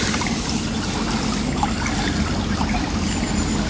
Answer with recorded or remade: recorded